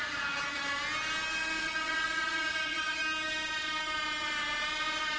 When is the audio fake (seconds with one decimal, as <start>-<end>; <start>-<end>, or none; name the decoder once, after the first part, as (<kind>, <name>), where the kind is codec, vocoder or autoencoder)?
0.0-0.6 (vocoder, Vocos); 1.6-3.0